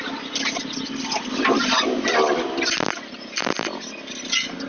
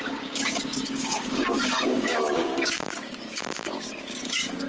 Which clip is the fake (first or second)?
second